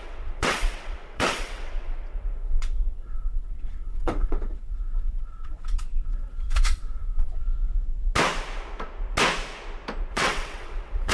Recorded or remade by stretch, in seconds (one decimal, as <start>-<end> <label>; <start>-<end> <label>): 0.0-7.4 remade; 7.4-10.1 recorded; 10.1-11.1 remade